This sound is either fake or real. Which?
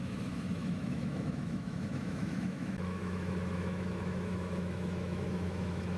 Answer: fake